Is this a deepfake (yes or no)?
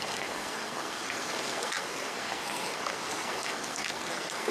yes